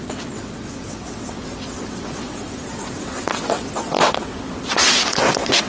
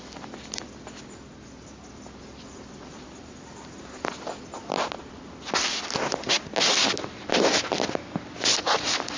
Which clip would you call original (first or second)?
second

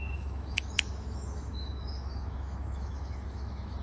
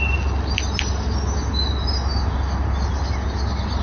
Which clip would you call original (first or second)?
second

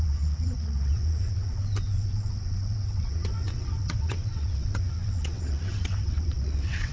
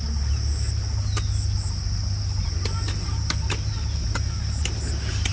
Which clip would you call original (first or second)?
second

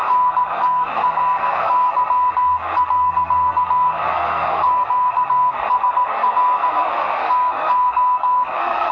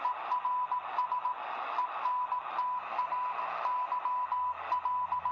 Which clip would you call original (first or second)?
second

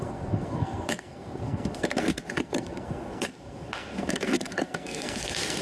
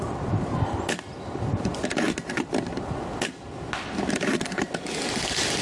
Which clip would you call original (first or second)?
second